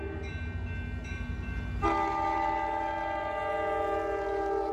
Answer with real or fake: real